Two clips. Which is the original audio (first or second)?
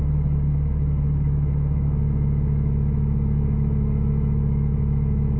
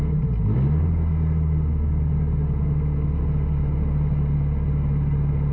second